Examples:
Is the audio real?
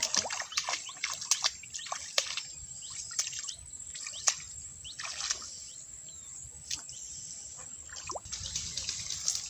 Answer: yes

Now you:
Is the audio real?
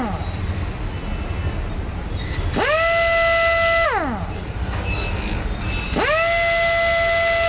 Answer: yes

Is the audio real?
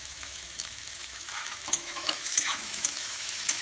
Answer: no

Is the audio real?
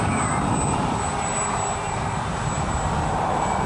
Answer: no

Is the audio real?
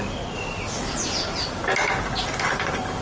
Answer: yes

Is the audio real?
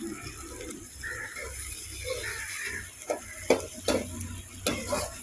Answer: yes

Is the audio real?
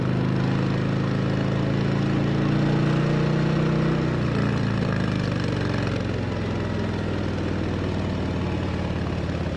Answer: yes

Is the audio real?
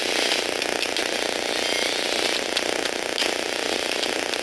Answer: yes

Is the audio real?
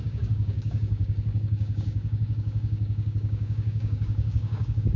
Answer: no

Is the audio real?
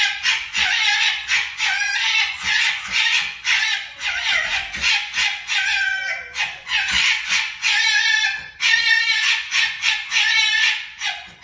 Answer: no